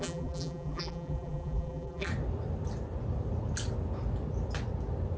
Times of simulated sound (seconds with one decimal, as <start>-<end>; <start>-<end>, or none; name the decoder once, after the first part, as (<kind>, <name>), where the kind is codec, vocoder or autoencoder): 0.0-2.1 (vocoder, BigVGAN v2)